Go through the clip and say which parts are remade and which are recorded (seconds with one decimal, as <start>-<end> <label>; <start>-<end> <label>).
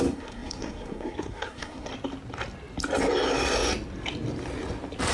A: 0.0-1.9 remade; 1.9-5.1 recorded